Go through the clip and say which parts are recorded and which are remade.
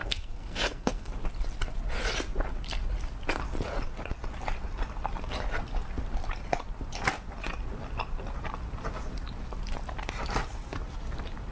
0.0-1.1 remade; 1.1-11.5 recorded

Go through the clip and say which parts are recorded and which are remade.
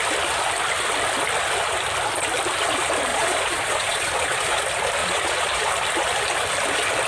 0.0-3.1 recorded; 3.1-4.6 remade; 4.6-5.0 recorded; 5.0-5.7 remade; 5.7-7.1 recorded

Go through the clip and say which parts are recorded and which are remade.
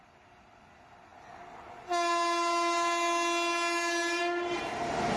0.0-5.2 recorded